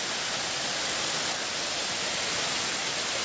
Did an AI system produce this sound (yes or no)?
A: no